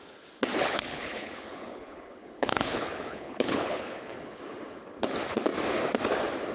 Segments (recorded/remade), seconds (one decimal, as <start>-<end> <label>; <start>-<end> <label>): 0.0-0.5 recorded; 0.5-4.4 remade; 4.4-6.5 recorded